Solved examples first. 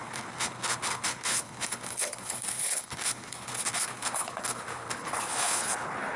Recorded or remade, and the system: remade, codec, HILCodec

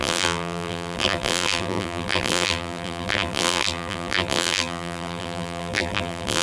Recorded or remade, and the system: remade, vocoder, BigVGAN v2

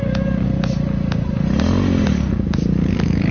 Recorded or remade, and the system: recorded